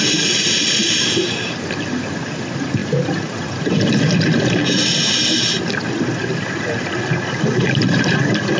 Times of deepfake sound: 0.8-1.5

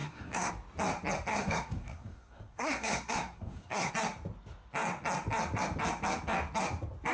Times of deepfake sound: 0.0-0.5; 1.3-3.9

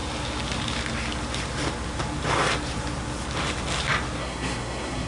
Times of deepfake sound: 4.2-5.1

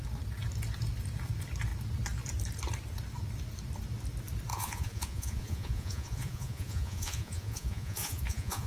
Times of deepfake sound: 4.5-8.7

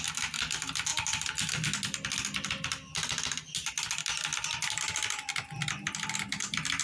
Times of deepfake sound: none